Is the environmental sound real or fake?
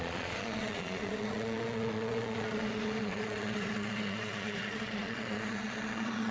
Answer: fake